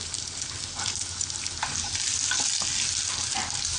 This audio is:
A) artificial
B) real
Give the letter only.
B